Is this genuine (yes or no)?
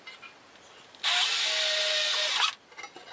yes